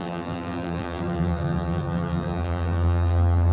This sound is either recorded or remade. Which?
remade